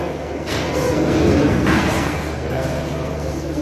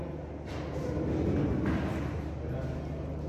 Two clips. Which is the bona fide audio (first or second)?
second